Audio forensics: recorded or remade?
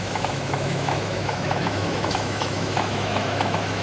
remade